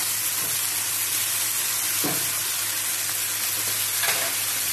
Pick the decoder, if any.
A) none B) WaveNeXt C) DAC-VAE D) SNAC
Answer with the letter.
A